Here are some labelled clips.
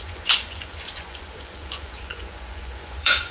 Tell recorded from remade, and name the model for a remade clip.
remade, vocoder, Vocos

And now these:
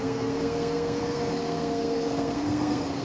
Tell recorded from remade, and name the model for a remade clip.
remade, codec, SNAC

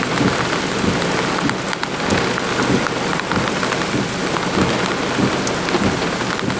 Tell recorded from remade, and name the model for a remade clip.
recorded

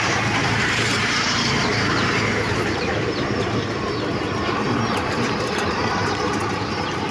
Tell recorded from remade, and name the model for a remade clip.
remade, vocoder, BigVGAN v2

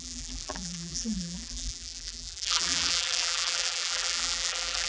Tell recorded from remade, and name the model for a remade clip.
remade, vocoder, BigVGAN v2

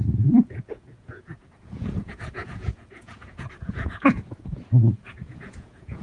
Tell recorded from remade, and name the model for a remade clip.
remade, vocoder, Vocos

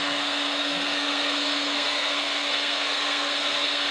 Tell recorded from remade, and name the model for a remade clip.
remade, codec, SNAC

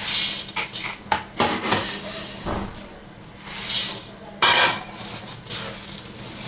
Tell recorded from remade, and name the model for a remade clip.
recorded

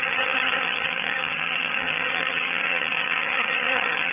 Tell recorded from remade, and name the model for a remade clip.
remade, vocoder, HiFi-GAN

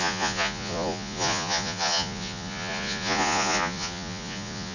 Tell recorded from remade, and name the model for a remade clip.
remade, vocoder, Vocos